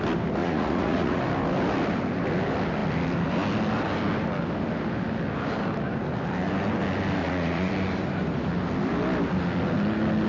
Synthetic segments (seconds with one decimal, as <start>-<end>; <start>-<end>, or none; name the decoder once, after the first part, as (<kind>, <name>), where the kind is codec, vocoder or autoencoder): 0.4-1.2 (vocoder, Vocos); 7.2-7.7